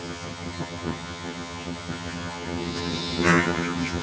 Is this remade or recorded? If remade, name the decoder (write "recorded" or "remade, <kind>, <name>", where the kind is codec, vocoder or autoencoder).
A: remade, vocoder, HiFi-GAN